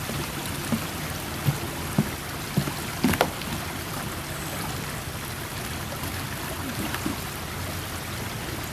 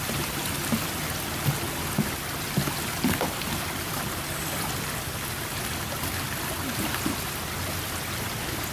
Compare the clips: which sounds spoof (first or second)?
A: first